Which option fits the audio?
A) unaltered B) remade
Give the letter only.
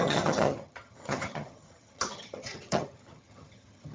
B